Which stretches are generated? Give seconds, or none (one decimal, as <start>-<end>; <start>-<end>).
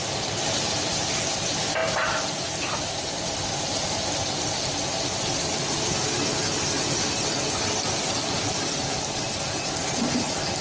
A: none